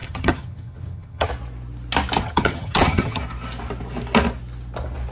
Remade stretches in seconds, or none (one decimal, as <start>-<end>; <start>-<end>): 0.0-1.3; 2.2-3.2